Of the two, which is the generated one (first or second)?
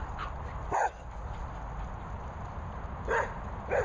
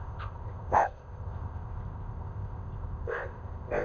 second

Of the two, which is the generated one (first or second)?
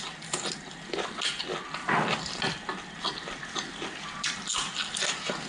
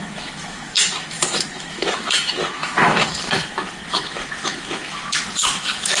second